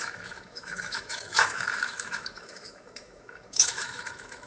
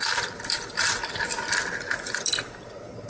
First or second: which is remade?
first